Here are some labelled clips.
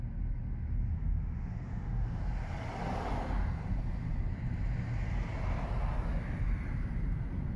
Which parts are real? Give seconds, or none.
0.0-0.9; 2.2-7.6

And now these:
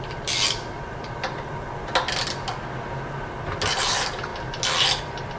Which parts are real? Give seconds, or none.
0.0-5.4

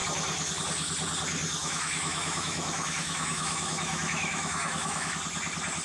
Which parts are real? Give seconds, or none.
0.0-1.6; 5.1-5.8

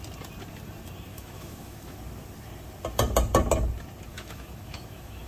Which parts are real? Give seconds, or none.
0.0-1.1; 2.0-4.1

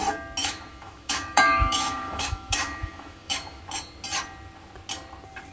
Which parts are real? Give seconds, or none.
0.0-0.4; 3.6-5.5

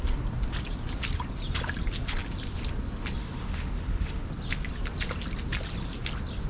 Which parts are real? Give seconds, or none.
0.0-3.2; 4.3-6.5